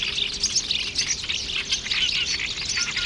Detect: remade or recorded recorded